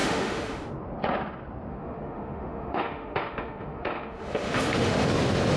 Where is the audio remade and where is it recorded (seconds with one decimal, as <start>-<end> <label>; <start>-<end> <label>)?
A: 0.0-0.7 remade; 0.7-1.7 recorded; 1.7-5.1 remade; 5.1-5.6 recorded